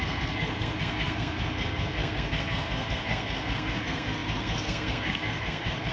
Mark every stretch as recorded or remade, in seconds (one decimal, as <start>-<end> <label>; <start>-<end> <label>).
0.0-5.9 remade